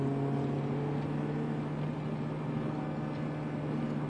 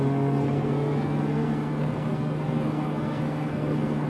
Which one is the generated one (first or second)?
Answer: second